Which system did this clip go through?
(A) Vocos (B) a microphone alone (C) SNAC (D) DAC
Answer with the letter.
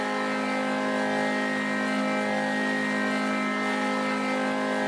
B